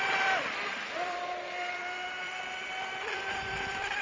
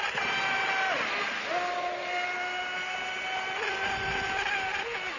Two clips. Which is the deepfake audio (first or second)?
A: first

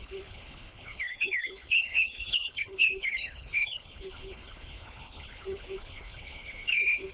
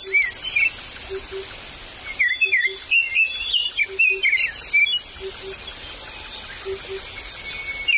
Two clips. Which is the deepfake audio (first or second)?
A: first